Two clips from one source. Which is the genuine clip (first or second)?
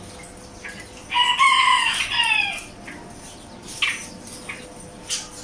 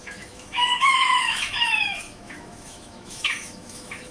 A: first